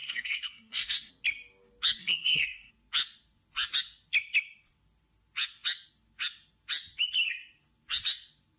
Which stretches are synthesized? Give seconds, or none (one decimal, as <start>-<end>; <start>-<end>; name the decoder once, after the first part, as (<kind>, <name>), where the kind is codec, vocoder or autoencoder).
0.0-1.1 (codec, SNAC); 2.0-2.7